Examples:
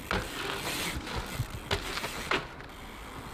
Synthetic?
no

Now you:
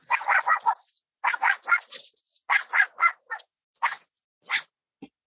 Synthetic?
no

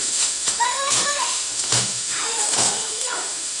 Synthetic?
yes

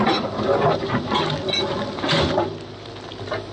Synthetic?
no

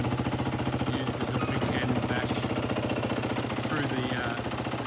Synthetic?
no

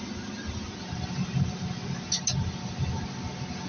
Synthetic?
no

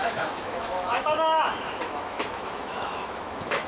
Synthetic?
yes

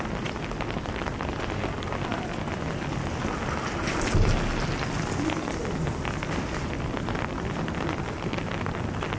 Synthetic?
no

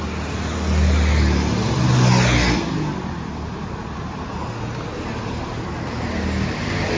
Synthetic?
no